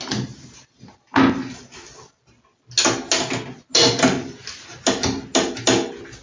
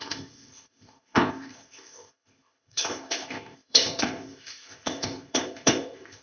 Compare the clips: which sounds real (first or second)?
first